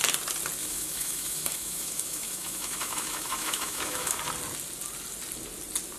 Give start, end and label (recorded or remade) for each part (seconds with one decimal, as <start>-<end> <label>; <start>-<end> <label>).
0.0-0.6 recorded; 0.6-4.2 remade; 4.2-6.0 recorded

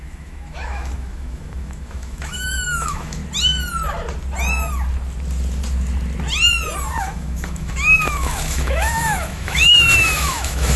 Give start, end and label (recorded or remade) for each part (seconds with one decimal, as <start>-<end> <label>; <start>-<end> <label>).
0.0-3.2 remade; 3.2-7.0 recorded; 7.0-10.8 remade

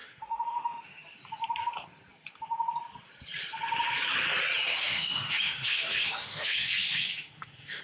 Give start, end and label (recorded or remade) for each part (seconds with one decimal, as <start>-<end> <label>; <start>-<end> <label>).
0.0-1.0 remade; 1.0-4.7 recorded; 4.7-7.8 remade